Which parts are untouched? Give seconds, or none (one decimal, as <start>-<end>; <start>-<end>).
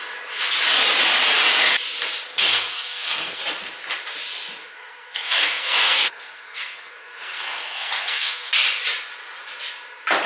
0.0-2.3; 3.4-4.6; 8.5-10.3